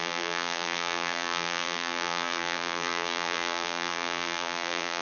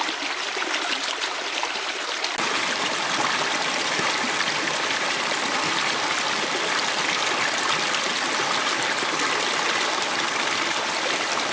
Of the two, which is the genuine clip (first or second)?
second